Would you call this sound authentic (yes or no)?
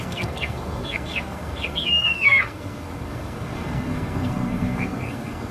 no